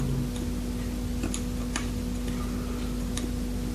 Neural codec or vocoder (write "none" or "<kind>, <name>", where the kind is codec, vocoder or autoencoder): none